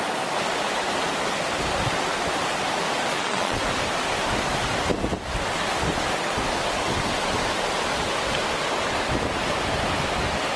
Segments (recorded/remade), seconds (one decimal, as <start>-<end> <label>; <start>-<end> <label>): 0.0-3.1 recorded; 3.1-3.6 remade; 3.6-10.6 recorded